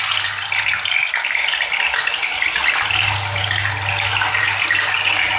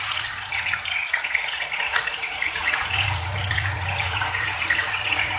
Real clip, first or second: first